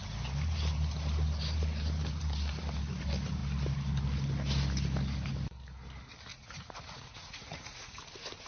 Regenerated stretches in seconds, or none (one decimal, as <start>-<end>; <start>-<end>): 6.3-8.0